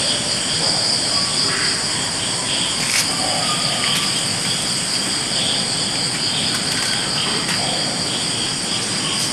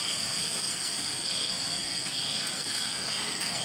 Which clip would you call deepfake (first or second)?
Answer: second